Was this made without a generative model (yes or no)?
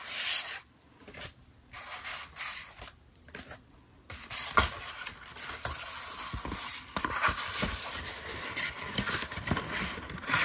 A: no